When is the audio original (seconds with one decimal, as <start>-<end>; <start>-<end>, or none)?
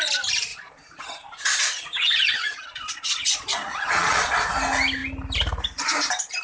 0.0-0.5; 4.3-6.4